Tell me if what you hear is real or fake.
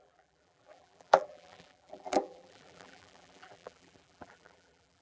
fake